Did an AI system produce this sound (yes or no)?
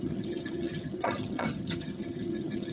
yes